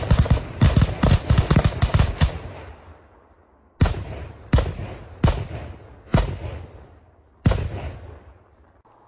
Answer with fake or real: real